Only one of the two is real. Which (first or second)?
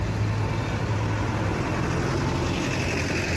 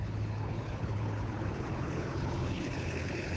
first